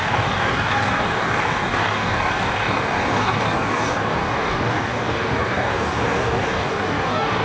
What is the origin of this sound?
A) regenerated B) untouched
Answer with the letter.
A